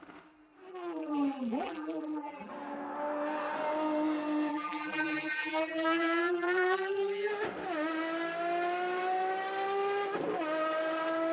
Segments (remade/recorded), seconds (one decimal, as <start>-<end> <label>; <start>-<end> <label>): 0.0-0.7 recorded; 0.7-2.5 remade; 2.5-4.5 recorded; 4.5-7.3 remade; 7.3-11.3 recorded